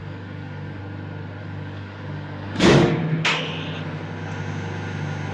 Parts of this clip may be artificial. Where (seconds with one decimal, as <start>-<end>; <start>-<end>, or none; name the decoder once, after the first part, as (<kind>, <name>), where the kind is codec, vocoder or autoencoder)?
0.0-0.8 (codec, DAC); 1.4-3.0